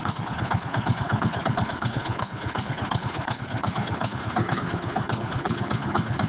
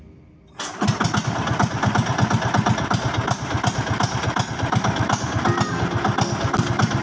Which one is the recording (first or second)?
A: second